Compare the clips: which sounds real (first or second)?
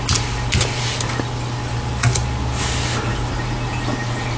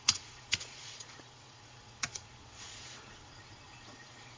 first